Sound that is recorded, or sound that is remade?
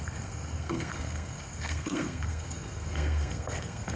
remade